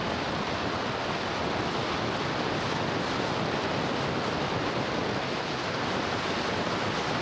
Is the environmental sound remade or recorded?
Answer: recorded